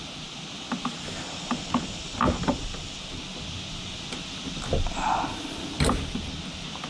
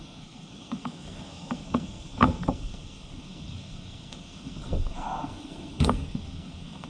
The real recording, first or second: first